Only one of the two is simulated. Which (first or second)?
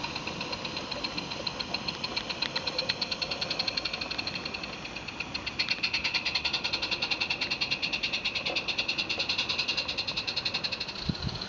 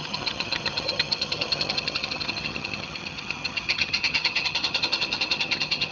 second